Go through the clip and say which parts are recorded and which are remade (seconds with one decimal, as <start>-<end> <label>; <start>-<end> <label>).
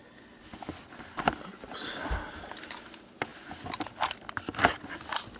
0.0-5.4 recorded